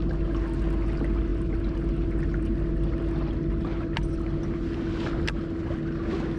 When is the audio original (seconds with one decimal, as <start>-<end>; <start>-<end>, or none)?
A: 0.0-6.4